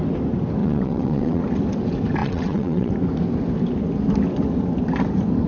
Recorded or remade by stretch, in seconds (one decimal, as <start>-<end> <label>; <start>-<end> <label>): 0.0-0.6 recorded; 0.6-1.4 remade; 1.4-2.2 recorded; 2.2-2.9 remade; 2.9-5.5 recorded

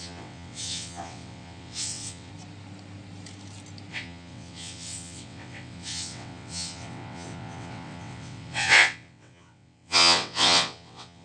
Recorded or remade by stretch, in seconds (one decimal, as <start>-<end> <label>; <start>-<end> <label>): 0.0-2.3 remade; 2.3-3.9 recorded; 3.9-11.2 remade